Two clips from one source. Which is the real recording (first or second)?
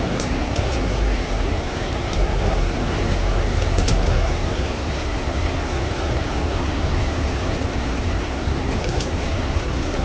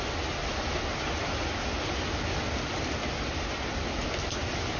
second